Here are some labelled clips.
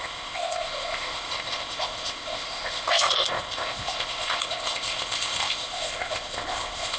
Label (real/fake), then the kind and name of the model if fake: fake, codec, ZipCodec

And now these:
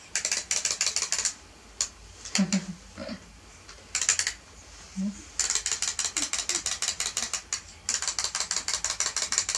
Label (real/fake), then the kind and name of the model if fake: real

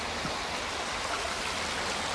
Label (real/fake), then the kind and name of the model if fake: real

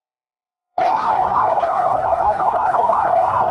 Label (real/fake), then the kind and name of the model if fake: fake, codec, SNAC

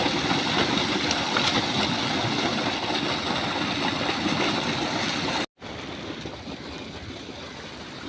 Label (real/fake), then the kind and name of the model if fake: real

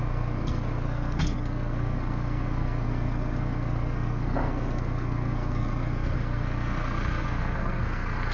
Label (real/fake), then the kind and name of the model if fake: fake, codec, SNAC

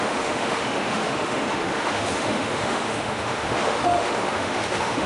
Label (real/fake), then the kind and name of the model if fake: fake, autoencoder, DAC-VAE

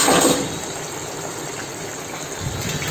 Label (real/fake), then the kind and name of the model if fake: real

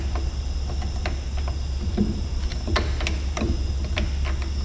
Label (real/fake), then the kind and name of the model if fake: real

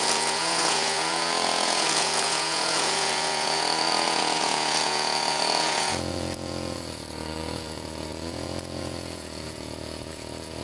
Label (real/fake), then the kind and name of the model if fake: fake, vocoder, Vocos